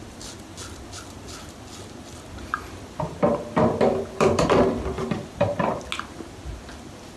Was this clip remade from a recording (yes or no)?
no